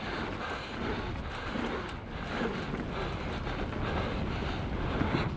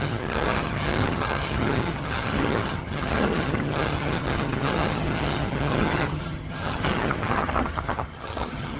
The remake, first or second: second